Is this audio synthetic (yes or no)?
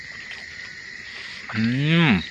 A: no